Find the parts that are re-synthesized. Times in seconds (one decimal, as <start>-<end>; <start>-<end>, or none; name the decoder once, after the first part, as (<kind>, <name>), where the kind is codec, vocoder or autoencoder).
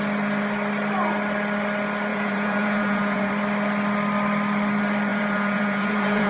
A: 2.1-3.3 (vocoder, Vocos); 5.1-6.3